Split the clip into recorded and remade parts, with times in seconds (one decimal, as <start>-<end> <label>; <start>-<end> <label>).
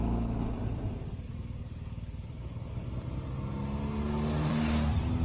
0.0-1.1 recorded; 1.1-2.9 remade; 2.9-5.2 recorded